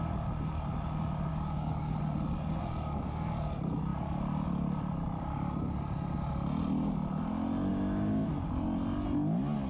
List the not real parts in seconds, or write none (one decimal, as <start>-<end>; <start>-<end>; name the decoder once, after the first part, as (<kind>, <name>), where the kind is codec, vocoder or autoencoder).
1.3-2.0 (codec, DAC); 7.7-8.3